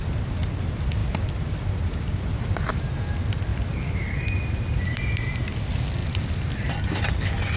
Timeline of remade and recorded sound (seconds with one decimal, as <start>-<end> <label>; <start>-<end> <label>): 0.0-3.5 recorded; 3.5-4.0 remade; 4.0-6.0 recorded; 6.0-7.0 remade; 7.0-7.6 recorded